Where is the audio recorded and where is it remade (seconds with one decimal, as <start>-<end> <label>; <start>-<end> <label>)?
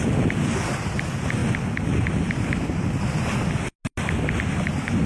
0.0-5.1 recorded